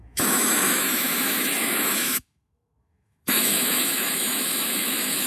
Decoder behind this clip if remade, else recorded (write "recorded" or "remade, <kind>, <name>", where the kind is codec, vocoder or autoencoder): remade, autoencoder, DAC-VAE